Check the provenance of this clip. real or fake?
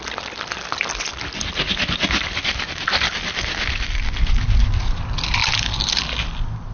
real